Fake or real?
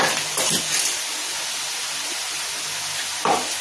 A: real